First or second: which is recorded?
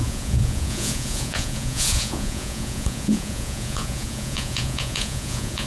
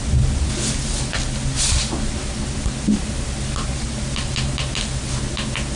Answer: second